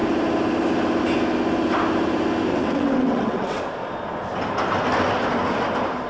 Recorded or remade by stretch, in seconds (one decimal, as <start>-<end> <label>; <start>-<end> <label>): 0.0-2.5 recorded; 2.5-3.6 remade; 3.6-6.1 recorded